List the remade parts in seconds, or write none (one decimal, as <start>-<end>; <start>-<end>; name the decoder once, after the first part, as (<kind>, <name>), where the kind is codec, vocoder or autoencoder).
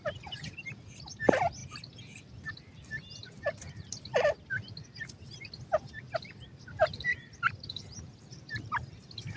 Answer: 3.2-4.3 (vocoder, BigVGAN v2); 7.1-8.2